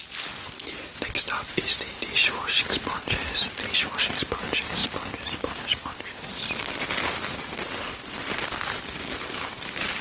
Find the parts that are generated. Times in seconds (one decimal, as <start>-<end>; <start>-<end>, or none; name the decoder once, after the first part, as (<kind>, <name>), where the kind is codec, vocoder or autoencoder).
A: none